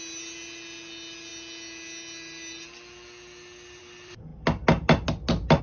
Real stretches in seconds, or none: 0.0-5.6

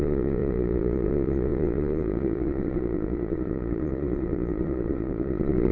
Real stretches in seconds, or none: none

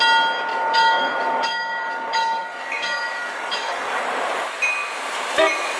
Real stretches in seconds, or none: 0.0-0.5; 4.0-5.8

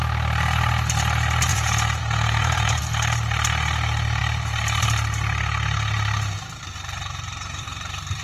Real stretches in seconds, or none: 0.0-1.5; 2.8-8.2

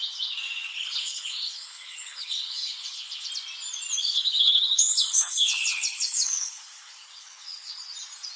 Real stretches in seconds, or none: 0.0-0.7; 3.3-4.0; 7.7-8.4

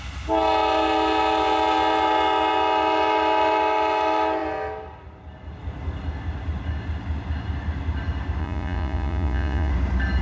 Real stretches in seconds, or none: 0.0-8.4; 9.7-10.2